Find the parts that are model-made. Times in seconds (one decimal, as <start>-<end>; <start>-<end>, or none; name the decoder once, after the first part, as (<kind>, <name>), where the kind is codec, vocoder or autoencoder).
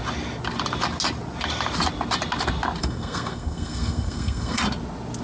2.8-4.6 (codec, SNAC)